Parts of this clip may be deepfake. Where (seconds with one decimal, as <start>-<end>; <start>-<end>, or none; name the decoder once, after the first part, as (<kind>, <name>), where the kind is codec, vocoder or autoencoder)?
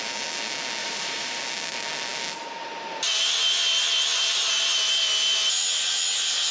0.8-1.4 (vocoder, BigVGAN v2)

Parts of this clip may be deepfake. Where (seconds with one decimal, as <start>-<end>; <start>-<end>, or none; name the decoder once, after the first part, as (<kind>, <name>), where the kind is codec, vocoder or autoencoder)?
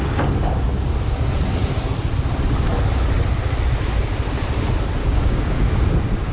5.0-5.7 (codec, DAC)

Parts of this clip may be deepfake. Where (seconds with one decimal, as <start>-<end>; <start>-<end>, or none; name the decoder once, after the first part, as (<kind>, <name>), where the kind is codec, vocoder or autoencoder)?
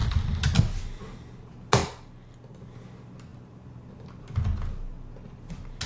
3.3-3.9 (vocoder, BigVGAN v2)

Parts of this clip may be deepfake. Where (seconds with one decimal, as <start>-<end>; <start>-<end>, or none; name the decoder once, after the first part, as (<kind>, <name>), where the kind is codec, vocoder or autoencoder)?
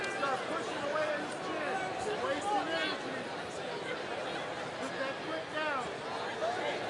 3.1-3.8 (vocoder, BigVGAN v2); 6.4-6.9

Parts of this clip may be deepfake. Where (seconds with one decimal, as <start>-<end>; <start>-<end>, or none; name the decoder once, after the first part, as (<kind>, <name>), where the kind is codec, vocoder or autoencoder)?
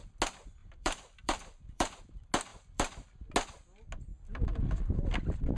0.6-2.0 (vocoder, BigVGAN v2); 2.5-3.3; 4.1-4.8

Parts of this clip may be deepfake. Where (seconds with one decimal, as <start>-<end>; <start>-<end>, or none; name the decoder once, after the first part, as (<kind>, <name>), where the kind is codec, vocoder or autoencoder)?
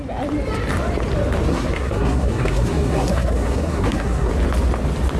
1.5-4.3 (codec, SNAC)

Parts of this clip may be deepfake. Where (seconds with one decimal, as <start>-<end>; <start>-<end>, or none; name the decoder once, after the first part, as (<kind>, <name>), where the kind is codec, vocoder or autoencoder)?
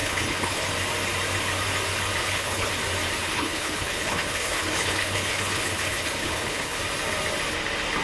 0.0-0.7 (codec, HILCodec); 2.2-2.7; 3.2-6.8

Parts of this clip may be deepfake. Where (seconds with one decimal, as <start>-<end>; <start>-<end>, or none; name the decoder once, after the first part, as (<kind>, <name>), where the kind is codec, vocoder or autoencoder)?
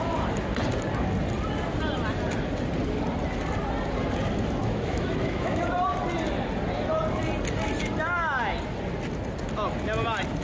4.6-5.6 (autoencoder, DAC-VAE)